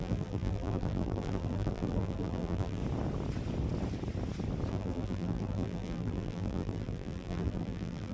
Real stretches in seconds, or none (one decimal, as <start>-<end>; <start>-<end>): 2.8-4.7